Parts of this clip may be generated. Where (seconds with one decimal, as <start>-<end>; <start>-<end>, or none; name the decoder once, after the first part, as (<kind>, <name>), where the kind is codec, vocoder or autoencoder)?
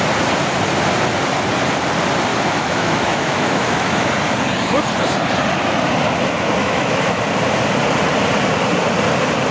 2.3-4.1 (autoencoder, DAC-VAE); 6.6-7.2